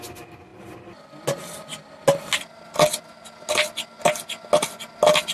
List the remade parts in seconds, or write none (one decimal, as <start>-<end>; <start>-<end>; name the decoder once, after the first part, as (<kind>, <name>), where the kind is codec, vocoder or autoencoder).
none